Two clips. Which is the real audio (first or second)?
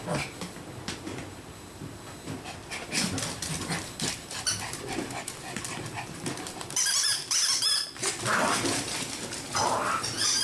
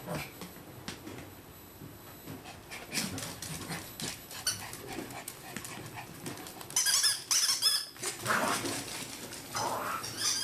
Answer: second